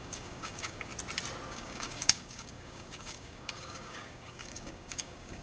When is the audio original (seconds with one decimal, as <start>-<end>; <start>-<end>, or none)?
0.9-1.5